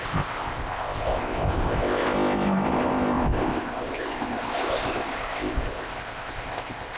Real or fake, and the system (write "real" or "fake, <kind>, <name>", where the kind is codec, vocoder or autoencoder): fake, codec, ZipCodec